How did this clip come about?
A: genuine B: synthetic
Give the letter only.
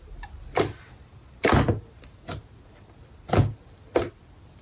A